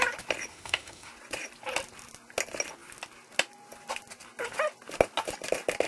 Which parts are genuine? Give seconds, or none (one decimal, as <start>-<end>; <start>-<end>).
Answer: 0.0-0.5; 1.1-5.9